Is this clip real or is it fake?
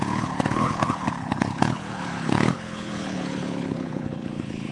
fake